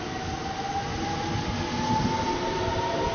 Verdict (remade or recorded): recorded